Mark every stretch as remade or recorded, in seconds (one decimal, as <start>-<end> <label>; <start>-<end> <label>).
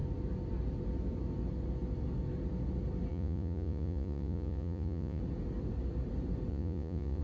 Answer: 0.0-3.1 recorded; 3.1-5.2 remade; 5.2-6.5 recorded; 6.5-7.2 remade